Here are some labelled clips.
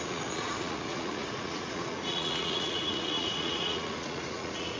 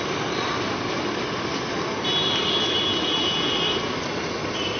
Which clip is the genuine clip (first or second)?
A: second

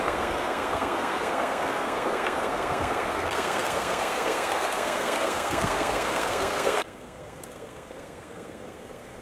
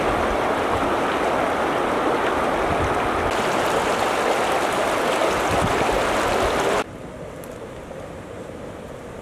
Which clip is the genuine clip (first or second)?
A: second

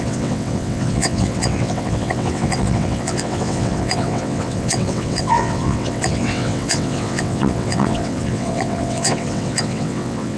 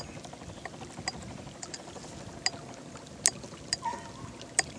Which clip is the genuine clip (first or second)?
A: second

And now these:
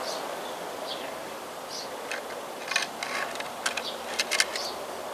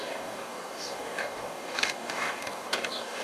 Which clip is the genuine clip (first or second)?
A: first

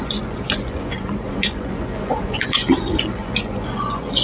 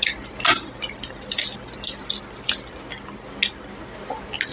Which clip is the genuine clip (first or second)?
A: second